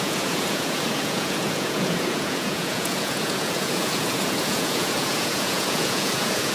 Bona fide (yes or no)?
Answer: no